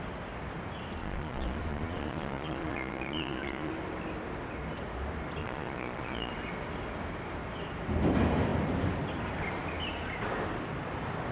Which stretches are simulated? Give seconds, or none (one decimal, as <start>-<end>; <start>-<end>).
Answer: 1.0-3.7; 5.4-6.3